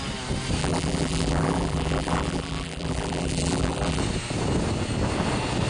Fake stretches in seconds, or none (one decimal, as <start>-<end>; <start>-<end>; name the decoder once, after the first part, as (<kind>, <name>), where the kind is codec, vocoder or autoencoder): 0.6-4.0 (vocoder, BigVGAN v2)